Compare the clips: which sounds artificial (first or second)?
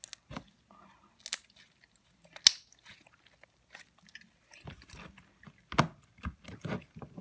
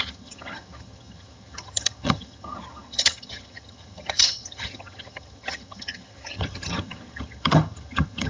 second